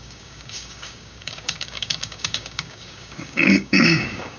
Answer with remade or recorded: remade